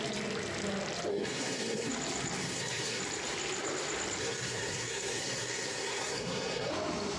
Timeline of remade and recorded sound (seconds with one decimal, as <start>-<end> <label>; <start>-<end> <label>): 0.0-1.1 recorded; 1.1-1.9 remade; 1.9-2.4 recorded; 2.4-3.0 remade; 3.0-4.2 recorded; 4.2-6.7 remade; 6.7-7.2 recorded